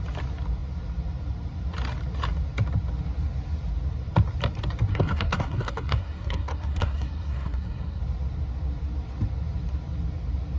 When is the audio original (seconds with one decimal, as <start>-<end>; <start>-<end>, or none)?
0.0-4.9; 8.0-10.6